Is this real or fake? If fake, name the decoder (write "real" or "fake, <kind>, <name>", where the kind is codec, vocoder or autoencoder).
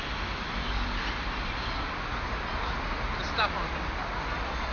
real